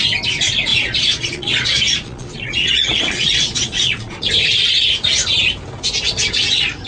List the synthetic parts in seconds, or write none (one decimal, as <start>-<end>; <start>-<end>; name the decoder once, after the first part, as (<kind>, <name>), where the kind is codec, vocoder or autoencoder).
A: 0.7-4.3 (vocoder, Vocos)